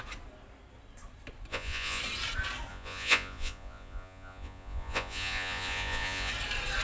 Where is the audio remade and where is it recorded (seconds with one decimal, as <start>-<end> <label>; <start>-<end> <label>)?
0.0-1.5 recorded; 1.5-2.0 remade; 2.0-2.7 recorded; 2.7-6.3 remade; 6.3-6.8 recorded